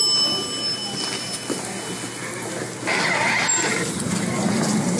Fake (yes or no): no